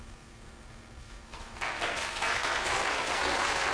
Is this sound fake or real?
fake